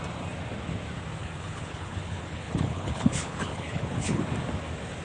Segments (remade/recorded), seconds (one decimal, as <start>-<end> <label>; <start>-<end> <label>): 0.0-1.2 recorded; 1.2-4.2 remade; 4.2-5.0 recorded